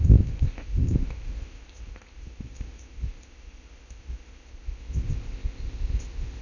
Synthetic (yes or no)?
yes